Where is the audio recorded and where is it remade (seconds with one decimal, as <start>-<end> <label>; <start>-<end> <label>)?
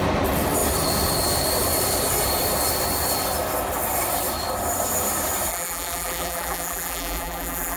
0.0-5.5 recorded; 5.5-7.8 remade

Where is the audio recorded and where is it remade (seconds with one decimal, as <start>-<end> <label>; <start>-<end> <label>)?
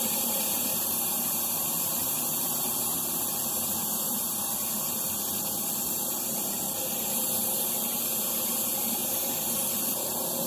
0.0-0.7 remade; 0.7-1.8 recorded; 1.8-2.9 remade; 2.9-7.5 recorded; 7.5-10.5 remade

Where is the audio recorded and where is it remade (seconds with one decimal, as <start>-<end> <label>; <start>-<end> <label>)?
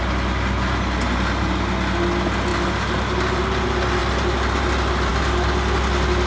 0.0-6.3 recorded